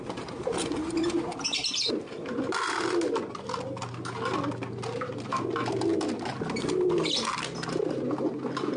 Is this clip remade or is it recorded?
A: recorded